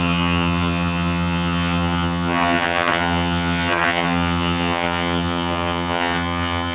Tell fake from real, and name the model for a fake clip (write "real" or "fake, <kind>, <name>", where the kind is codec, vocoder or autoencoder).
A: fake, vocoder, HiFi-GAN